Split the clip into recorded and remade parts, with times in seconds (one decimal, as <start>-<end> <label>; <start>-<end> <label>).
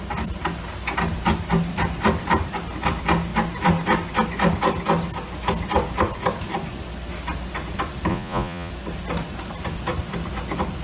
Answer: 0.0-8.1 recorded; 8.1-8.7 remade; 8.7-10.8 recorded